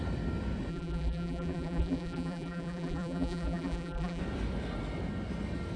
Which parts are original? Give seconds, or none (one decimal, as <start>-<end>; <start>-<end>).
0.0-0.7; 4.2-5.8